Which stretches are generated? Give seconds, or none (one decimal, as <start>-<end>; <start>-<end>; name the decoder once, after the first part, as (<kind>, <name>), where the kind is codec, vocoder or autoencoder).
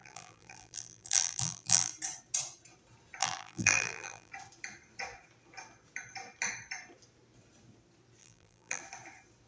0.0-1.9 (vocoder, BigVGAN v2); 3.2-4.3; 8.2-8.8